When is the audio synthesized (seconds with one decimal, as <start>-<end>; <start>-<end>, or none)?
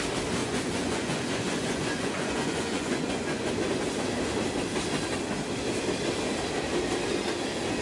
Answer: 0.4-3.5